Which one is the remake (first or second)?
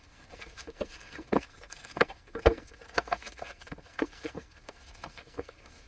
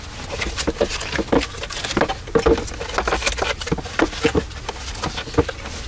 first